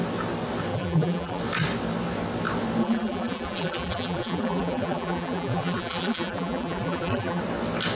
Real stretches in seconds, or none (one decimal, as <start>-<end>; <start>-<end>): 0.0-0.7; 1.4-2.8; 7.4-7.9